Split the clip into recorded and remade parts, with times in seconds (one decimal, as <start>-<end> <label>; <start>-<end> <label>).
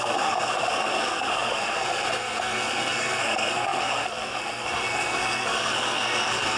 0.0-6.6 remade